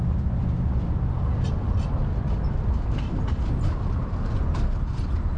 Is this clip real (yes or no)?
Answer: yes